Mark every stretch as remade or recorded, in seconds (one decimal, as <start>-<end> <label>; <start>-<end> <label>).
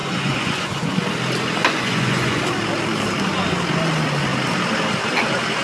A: 0.0-0.9 remade; 0.9-1.6 recorded; 1.6-2.4 remade; 2.4-5.6 recorded